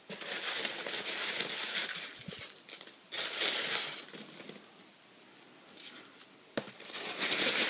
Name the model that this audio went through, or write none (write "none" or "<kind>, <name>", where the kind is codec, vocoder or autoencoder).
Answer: none